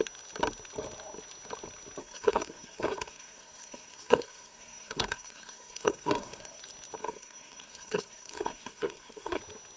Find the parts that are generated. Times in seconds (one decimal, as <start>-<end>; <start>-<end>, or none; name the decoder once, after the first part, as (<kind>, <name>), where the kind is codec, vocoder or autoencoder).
2.0-6.6 (codec, SNAC); 7.0-9.4